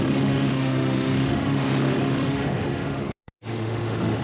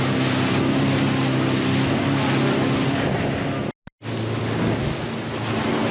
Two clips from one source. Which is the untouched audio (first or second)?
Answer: second